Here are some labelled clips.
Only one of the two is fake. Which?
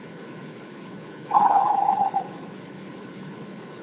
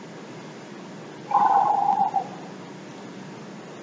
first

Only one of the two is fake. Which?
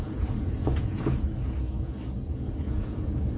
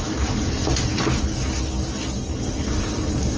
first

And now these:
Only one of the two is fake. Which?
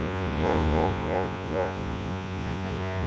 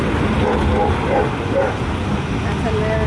first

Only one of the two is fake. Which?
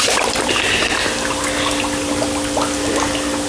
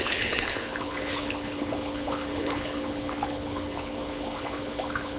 second